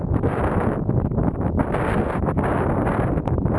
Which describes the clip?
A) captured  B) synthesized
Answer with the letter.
A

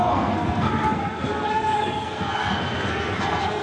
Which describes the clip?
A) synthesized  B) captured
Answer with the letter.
A